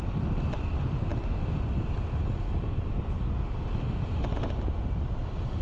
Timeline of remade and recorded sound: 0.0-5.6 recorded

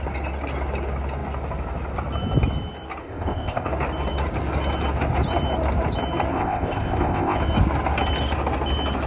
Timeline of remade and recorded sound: 0.0-3.0 recorded; 3.0-3.7 remade; 3.7-6.3 recorded; 6.3-7.4 remade; 7.4-9.1 recorded